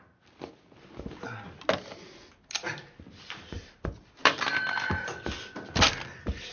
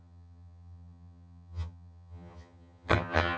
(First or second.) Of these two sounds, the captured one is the first